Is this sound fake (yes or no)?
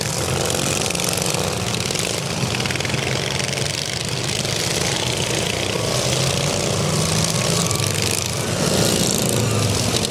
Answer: no